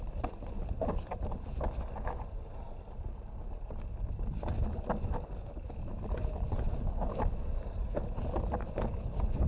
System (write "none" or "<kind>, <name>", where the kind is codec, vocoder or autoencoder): none